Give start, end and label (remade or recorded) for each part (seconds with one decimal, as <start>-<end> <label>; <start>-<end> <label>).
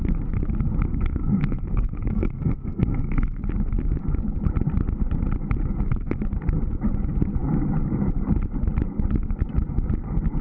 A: 0.0-0.9 recorded; 0.9-3.4 remade; 3.4-10.4 recorded